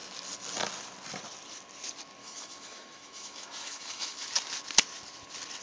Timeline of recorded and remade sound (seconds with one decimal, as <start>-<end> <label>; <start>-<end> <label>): 0.0-2.2 recorded; 2.2-4.3 remade; 4.3-5.6 recorded